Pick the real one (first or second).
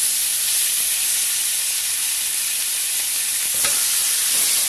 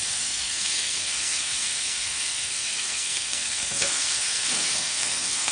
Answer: first